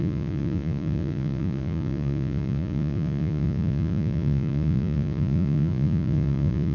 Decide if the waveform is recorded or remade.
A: remade